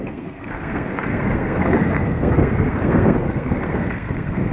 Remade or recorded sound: remade